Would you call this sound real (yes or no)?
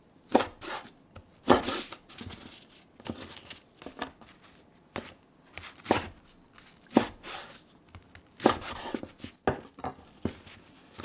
yes